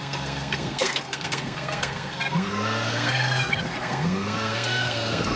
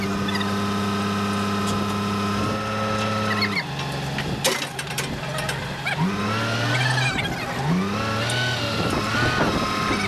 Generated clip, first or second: first